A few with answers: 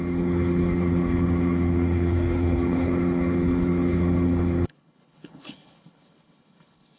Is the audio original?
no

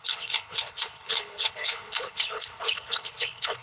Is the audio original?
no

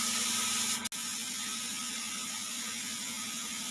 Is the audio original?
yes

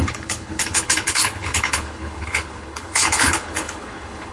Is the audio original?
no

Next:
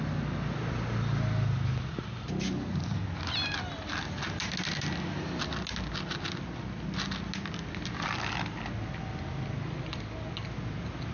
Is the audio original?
yes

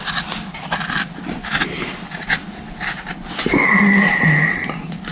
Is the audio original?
yes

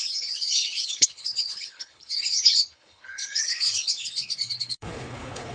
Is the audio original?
no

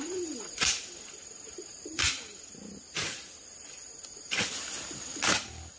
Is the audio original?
yes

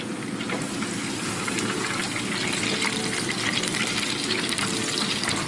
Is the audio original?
yes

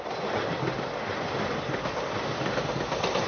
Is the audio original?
yes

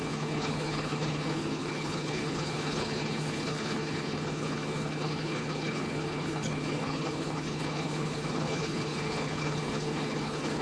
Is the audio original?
no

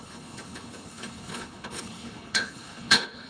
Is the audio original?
no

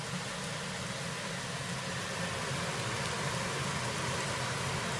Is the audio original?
yes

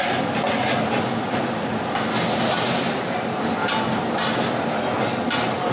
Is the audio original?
yes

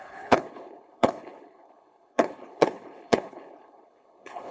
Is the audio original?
no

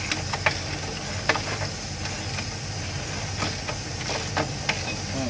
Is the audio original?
yes